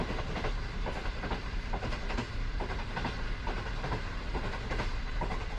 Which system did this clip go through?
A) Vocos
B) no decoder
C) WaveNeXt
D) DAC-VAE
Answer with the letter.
B